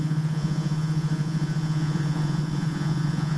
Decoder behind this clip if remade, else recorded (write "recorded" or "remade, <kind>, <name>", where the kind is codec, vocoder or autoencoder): remade, vocoder, Vocos